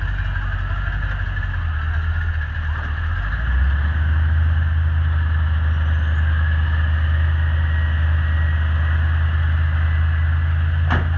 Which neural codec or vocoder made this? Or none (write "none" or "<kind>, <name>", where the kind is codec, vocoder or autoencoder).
none